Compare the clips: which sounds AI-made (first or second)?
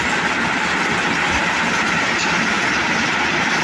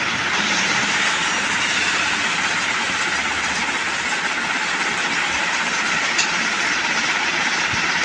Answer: second